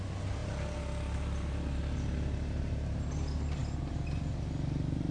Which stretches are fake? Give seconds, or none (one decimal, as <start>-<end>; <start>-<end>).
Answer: none